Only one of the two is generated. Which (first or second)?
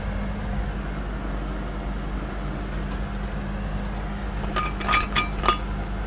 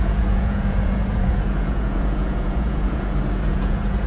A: second